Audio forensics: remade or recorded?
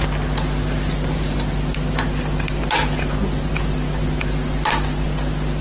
recorded